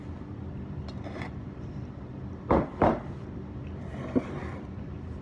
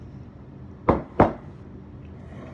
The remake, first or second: first